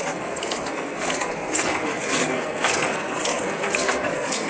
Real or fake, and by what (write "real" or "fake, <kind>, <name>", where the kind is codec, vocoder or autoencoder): fake, codec, SNAC